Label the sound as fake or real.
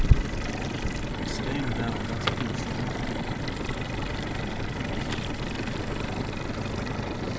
real